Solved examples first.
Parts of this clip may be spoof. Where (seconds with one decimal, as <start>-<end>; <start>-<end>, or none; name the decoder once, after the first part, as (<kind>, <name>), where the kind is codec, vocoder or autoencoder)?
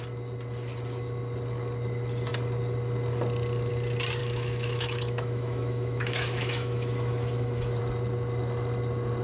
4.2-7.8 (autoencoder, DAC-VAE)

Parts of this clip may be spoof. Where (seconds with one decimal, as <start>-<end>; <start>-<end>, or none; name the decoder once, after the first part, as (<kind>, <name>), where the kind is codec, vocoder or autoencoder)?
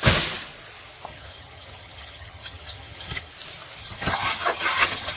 1.1-3.3 (vocoder, HiFi-GAN); 3.8-5.2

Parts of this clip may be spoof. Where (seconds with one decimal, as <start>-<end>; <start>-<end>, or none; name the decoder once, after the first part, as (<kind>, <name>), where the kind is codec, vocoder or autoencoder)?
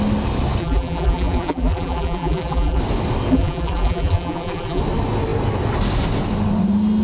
0.6-2.8 (vocoder, BigVGAN v2); 3.3-4.8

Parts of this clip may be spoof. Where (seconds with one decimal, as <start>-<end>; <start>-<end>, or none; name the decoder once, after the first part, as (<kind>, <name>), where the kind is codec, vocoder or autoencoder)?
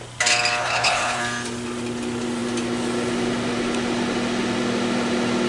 0.6-1.2 (codec, HILCodec)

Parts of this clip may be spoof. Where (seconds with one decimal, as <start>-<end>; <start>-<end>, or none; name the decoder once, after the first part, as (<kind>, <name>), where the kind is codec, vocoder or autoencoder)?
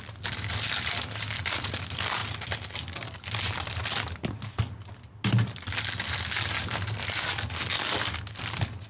none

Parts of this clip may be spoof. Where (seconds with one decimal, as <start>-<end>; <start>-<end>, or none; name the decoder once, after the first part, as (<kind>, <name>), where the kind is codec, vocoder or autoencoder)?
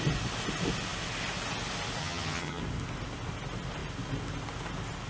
2.0-2.6 (vocoder, HiFi-GAN)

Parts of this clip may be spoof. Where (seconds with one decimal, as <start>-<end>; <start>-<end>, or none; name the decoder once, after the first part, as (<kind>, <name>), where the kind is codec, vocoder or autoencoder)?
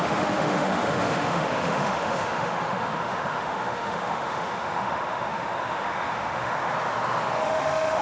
0.0-6.7 (autoencoder, DAC-VAE); 7.4-8.0